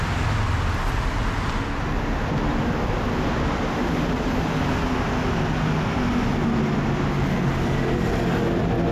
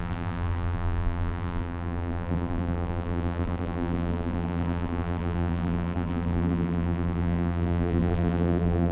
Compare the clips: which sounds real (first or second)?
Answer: first